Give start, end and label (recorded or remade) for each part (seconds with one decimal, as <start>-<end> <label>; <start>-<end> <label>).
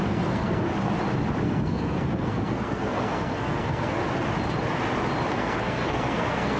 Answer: 0.0-0.7 remade; 0.7-1.4 recorded; 1.4-4.0 remade; 4.0-5.3 recorded; 5.3-6.6 remade